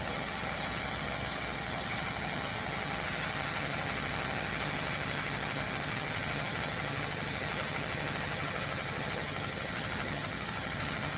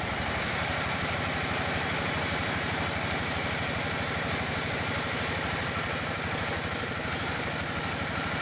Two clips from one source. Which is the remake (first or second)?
first